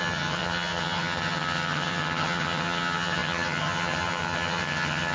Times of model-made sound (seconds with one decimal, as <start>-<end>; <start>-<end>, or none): 0.0-5.1